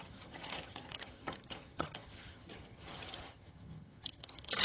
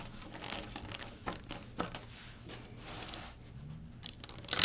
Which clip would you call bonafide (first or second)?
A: second